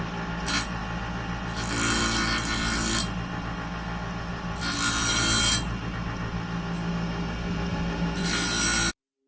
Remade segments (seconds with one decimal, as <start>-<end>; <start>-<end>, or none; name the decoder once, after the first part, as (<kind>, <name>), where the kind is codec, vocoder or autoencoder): none